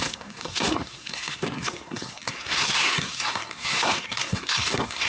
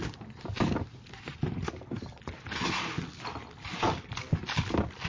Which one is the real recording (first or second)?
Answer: second